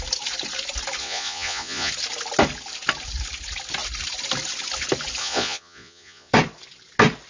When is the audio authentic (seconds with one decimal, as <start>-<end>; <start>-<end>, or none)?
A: 0.0-1.0; 1.9-5.2; 6.3-7.3